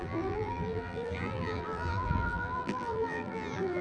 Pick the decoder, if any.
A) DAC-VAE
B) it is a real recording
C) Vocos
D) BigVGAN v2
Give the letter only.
D